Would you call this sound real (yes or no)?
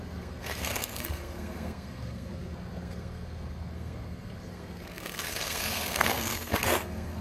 no